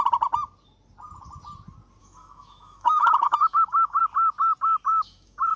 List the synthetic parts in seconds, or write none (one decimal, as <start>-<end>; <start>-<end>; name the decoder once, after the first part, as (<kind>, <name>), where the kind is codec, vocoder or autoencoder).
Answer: 2.0-4.0 (autoencoder, DAC-VAE); 4.9-5.6